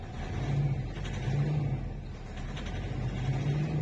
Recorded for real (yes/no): yes